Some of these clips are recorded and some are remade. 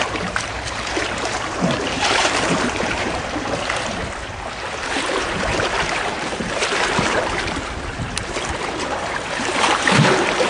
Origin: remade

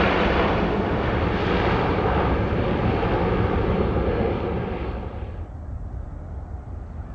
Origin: recorded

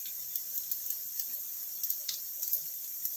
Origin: recorded